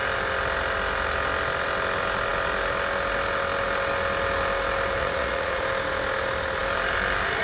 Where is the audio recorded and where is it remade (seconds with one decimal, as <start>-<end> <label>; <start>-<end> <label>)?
0.0-5.0 recorded; 5.0-5.6 remade; 5.6-7.4 recorded